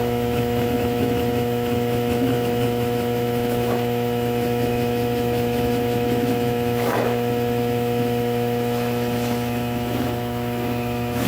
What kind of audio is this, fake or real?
fake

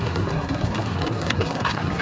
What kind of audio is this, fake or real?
fake